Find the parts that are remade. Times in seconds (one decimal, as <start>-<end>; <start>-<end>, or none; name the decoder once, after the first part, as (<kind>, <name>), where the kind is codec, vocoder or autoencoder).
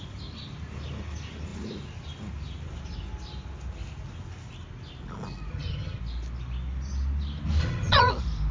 5.5-6.0 (vocoder, HiFi-GAN); 7.6-8.1